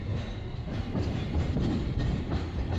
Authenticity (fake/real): fake